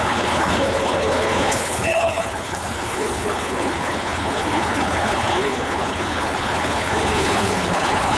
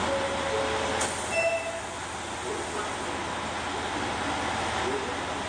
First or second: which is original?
second